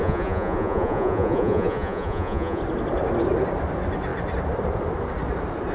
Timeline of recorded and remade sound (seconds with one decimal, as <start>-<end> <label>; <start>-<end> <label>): 0.0-2.6 remade; 2.6-5.7 recorded